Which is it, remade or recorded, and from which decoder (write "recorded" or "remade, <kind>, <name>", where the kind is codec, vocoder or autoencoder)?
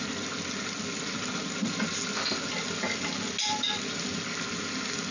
recorded